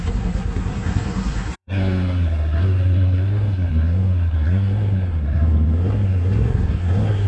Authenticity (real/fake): fake